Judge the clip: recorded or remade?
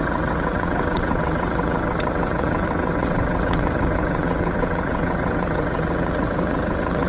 remade